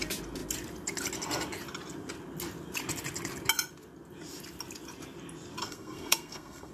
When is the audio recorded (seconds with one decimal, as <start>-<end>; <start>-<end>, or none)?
0.0-5.6